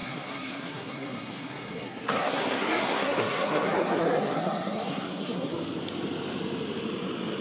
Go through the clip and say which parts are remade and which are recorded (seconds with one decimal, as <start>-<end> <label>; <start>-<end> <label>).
0.0-5.5 remade; 5.5-7.4 recorded